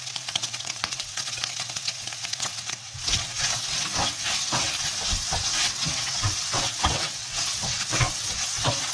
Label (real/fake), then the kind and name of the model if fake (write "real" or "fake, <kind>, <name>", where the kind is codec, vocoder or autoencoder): fake, vocoder, WaveNeXt